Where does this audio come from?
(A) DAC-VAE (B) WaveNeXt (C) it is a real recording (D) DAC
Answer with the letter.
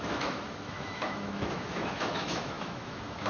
A